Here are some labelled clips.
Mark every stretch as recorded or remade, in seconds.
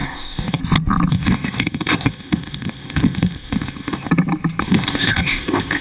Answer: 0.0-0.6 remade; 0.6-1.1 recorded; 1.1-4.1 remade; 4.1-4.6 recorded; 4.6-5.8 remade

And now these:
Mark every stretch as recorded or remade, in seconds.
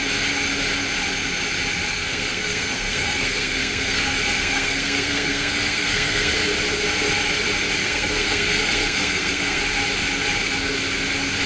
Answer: 0.0-1.9 recorded; 1.9-6.3 remade; 6.3-7.8 recorded; 7.8-9.6 remade; 9.6-11.5 recorded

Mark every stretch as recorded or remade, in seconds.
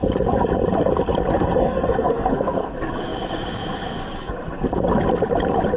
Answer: 0.0-1.6 recorded; 1.6-2.7 remade; 2.7-5.8 recorded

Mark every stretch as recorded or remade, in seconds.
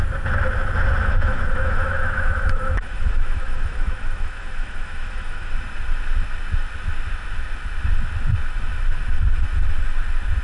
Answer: 0.0-1.0 recorded; 1.0-5.5 remade; 5.5-10.4 recorded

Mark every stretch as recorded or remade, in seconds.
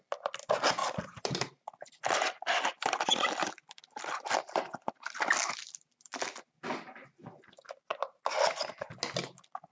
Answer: 0.0-0.8 recorded; 0.8-4.9 remade; 4.9-9.7 recorded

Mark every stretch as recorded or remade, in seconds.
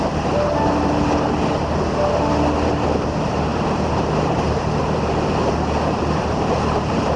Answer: 0.0-7.2 recorded